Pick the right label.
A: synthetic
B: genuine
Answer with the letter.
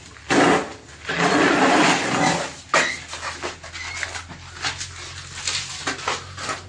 B